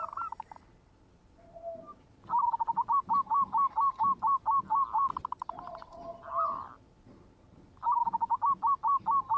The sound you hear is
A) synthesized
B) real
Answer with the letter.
B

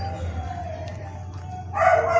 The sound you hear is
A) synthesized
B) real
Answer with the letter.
B